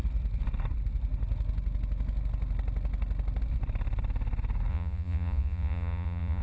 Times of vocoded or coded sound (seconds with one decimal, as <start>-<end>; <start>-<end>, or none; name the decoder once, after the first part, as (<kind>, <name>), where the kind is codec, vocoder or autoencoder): 4.7-6.4 (vocoder, Vocos)